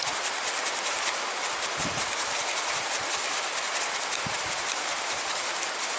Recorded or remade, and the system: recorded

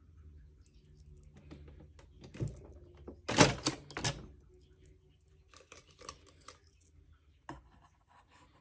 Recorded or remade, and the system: recorded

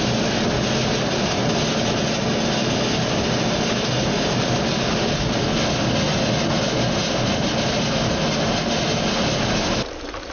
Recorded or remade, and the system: recorded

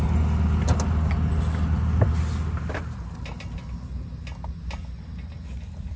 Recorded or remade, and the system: recorded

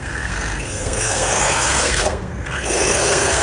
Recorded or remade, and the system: remade, codec, SNAC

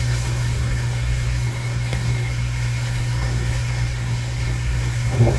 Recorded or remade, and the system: remade, codec, SNAC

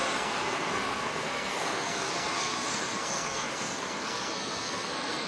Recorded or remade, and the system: remade, codec, SNAC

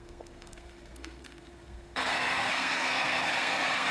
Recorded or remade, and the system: remade, codec, SNAC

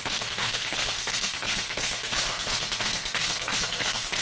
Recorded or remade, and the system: remade, codec, SNAC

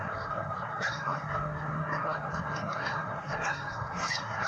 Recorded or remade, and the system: remade, codec, SNAC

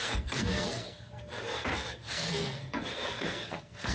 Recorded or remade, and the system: remade, codec, SNAC